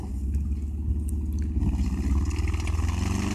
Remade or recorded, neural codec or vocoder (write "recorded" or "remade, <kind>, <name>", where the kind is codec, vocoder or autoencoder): recorded